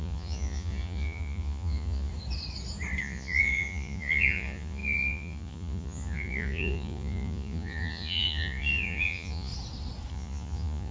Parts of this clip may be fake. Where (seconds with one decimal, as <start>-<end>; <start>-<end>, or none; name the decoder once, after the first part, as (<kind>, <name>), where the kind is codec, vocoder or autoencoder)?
0.0-2.1 (vocoder, Vocos); 3.0-9.5; 10.1-10.9